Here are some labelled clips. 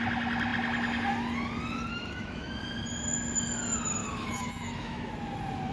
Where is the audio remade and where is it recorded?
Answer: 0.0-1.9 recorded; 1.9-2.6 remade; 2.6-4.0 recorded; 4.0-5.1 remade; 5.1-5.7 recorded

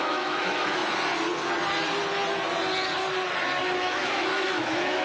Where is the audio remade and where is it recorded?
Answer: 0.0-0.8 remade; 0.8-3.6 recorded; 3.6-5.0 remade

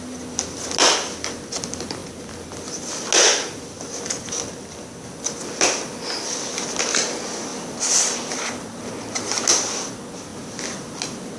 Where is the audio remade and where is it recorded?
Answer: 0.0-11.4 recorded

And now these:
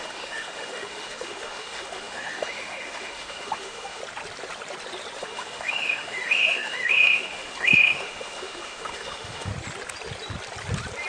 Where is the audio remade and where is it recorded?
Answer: 0.0-4.0 remade; 4.0-5.2 recorded; 5.2-9.5 remade; 9.5-11.1 recorded